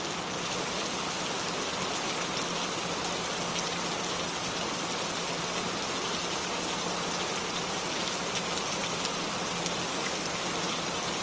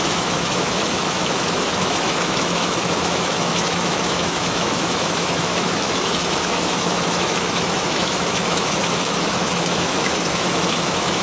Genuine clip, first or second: first